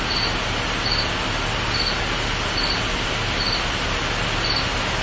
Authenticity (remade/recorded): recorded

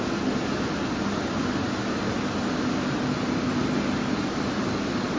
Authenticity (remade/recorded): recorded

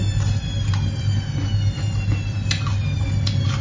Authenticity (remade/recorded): recorded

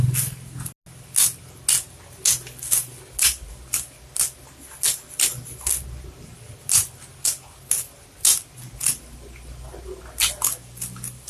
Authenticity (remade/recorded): recorded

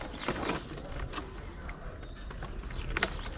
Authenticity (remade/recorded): recorded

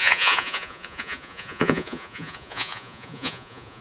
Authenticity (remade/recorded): remade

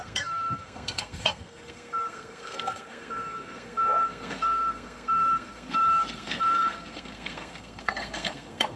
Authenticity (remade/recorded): remade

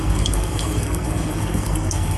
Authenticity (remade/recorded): remade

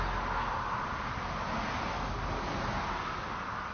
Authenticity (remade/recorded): recorded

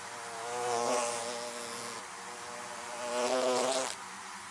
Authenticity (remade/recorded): recorded